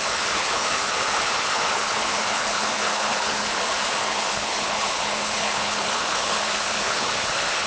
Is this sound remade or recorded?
remade